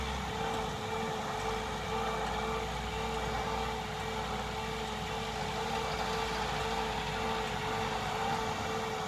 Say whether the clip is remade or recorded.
recorded